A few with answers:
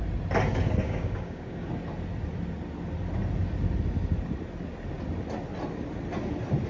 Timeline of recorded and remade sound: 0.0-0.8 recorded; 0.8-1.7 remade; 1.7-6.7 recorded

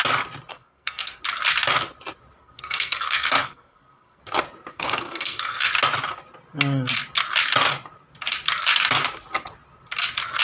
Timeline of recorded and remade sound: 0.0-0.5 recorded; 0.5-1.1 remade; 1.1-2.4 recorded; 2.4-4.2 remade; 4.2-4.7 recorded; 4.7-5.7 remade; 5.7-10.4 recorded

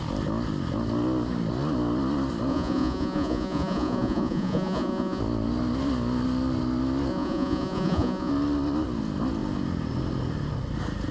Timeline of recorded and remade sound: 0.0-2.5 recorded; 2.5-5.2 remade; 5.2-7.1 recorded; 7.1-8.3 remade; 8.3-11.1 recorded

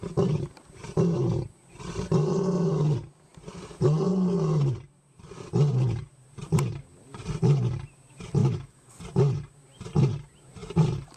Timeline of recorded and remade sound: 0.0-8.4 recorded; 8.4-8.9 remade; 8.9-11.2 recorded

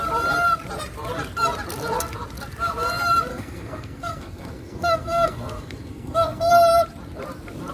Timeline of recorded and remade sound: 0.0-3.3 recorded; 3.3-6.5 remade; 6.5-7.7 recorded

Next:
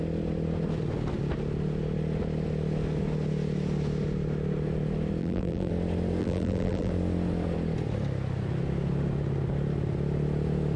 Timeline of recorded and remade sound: 0.0-5.2 recorded; 5.2-5.7 remade; 5.7-6.2 recorded; 6.2-6.9 remade; 6.9-10.8 recorded

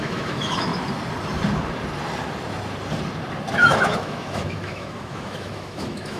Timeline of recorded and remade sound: 0.0-0.7 remade; 0.7-3.5 recorded; 3.5-6.2 remade

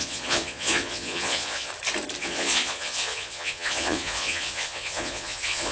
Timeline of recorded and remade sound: 0.0-1.7 remade; 1.7-2.2 recorded; 2.2-5.7 remade